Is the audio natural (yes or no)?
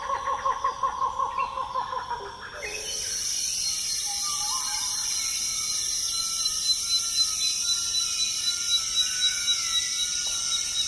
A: yes